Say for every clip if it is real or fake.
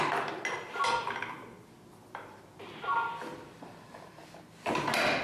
real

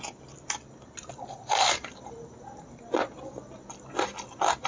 real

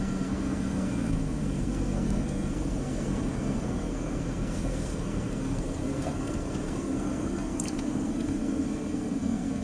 fake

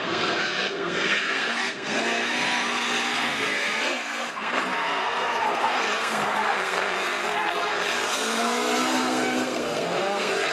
fake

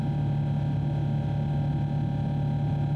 real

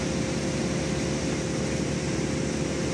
real